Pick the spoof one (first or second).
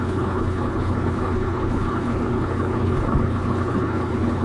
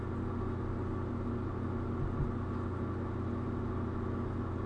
first